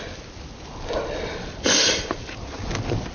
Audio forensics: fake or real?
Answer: real